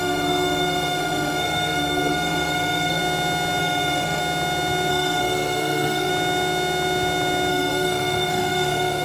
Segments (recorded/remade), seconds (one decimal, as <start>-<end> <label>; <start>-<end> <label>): 0.0-3.0 remade; 3.0-3.6 recorded; 3.6-4.2 remade; 4.2-4.9 recorded; 4.9-6.1 remade; 6.1-7.5 recorded; 7.5-9.0 remade